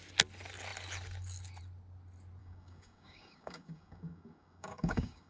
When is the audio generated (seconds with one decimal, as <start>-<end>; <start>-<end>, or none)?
2.4-5.3